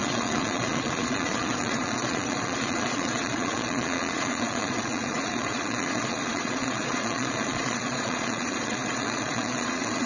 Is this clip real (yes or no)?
no